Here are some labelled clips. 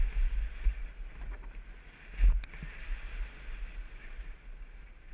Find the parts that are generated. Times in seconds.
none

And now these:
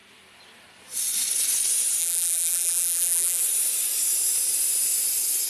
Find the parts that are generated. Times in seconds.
2.0-3.4 (vocoder, BigVGAN v2)